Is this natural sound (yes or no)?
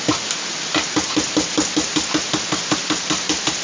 yes